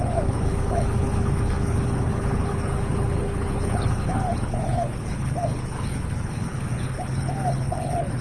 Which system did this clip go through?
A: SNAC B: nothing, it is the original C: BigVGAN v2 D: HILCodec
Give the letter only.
D